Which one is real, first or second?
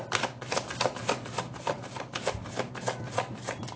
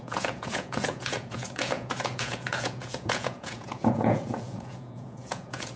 first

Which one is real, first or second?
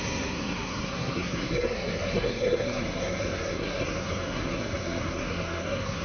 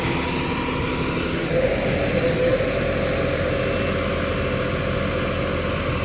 second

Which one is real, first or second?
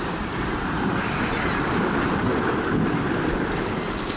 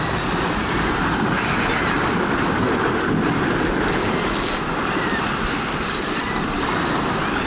second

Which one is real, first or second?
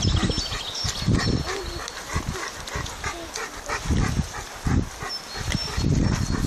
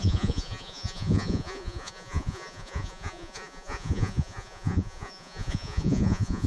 first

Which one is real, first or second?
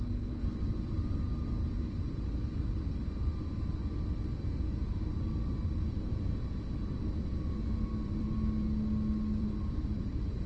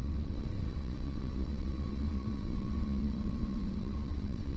first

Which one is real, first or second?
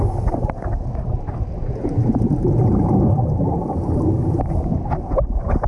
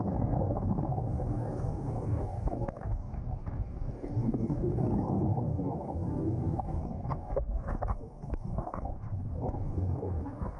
first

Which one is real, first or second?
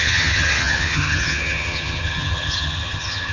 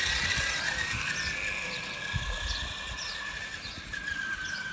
second